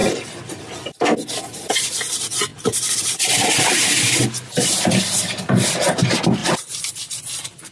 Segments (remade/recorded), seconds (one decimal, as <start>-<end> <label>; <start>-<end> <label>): 0.0-7.7 recorded